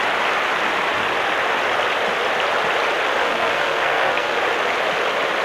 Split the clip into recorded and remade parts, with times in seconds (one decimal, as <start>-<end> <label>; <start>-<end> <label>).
0.0-3.2 recorded; 3.2-4.4 remade; 4.4-5.4 recorded